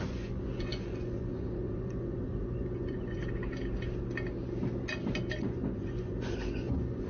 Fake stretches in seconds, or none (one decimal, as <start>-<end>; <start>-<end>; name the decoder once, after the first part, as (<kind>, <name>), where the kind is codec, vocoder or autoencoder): 0.0-3.2 (vocoder, Vocos); 5.4-7.1